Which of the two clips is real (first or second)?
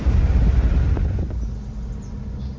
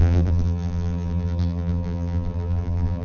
first